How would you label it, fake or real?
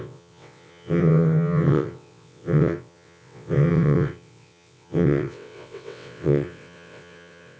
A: fake